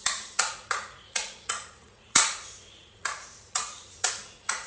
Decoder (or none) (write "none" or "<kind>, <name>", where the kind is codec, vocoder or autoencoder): vocoder, Vocos